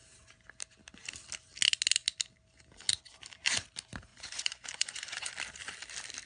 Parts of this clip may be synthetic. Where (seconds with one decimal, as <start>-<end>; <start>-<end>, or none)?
4.1-5.3